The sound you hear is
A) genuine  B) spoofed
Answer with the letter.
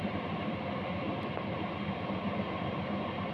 A